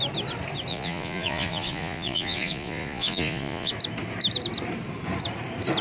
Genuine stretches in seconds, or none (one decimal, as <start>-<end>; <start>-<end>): 0.0-0.7; 3.7-5.8